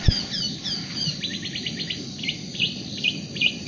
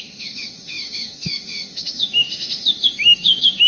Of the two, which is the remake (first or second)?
second